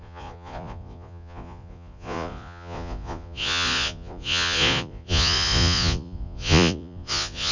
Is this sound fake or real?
fake